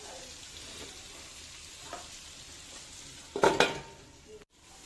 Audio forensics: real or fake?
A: real